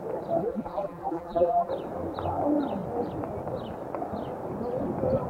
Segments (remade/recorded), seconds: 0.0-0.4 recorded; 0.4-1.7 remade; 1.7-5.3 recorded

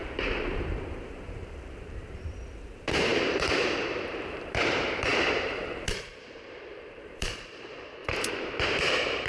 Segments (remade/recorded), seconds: 0.0-9.3 remade

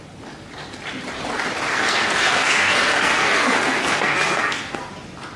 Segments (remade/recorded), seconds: 0.0-1.7 recorded; 1.7-4.9 remade; 4.9-5.4 recorded